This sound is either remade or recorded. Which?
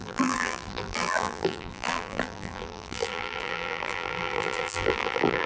remade